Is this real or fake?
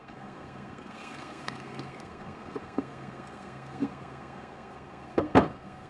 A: fake